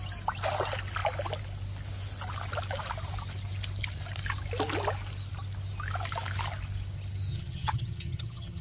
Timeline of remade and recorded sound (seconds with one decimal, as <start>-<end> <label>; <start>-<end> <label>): 0.0-7.3 recorded; 7.3-8.6 remade

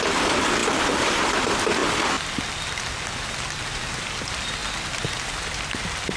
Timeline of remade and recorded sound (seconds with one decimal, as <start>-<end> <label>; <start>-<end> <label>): 0.0-0.6 remade; 0.6-1.2 recorded; 1.2-1.8 remade; 1.8-3.6 recorded; 3.6-4.6 remade; 4.6-5.8 recorded; 5.8-6.2 remade

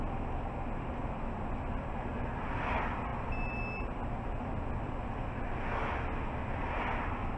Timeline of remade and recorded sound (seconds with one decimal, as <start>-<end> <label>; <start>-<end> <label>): 0.0-7.4 recorded

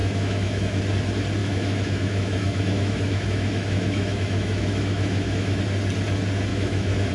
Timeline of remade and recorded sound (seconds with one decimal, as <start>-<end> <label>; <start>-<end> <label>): 0.0-0.8 remade; 0.8-1.4 recorded; 1.4-5.6 remade; 5.6-6.5 recorded; 6.5-7.1 remade

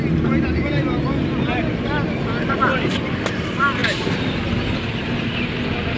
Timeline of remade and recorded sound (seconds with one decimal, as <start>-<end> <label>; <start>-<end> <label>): 0.0-6.0 recorded

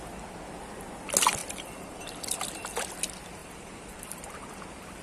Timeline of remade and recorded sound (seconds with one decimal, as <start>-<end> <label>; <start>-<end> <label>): 0.0-1.4 recorded; 1.4-2.7 remade; 2.7-3.4 recorded; 3.4-4.6 remade; 4.6-5.0 recorded

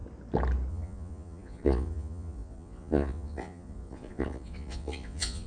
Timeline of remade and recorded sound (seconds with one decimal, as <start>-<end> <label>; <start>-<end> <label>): 0.0-0.7 recorded; 0.7-5.5 remade

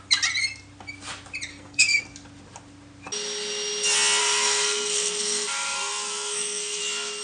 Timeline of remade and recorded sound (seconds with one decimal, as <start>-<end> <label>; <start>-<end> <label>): 0.0-1.5 recorded; 1.5-2.0 remade; 2.0-4.2 recorded; 4.2-6.8 remade; 6.8-7.2 recorded